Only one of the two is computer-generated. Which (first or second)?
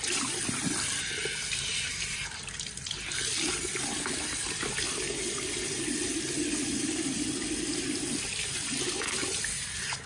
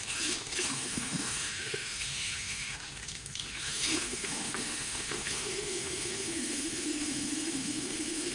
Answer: second